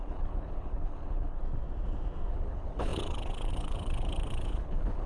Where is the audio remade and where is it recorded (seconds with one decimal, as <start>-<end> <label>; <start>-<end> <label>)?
0.0-1.4 remade; 1.4-2.3 recorded; 2.3-5.1 remade